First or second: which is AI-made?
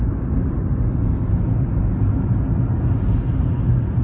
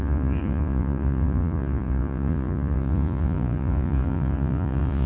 second